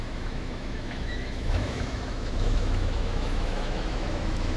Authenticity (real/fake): fake